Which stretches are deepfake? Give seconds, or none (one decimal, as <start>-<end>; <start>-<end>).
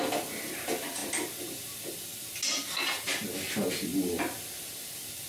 none